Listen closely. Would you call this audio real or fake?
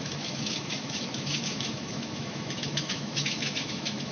fake